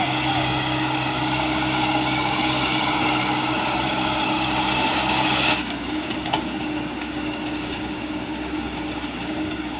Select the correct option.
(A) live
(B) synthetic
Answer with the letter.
B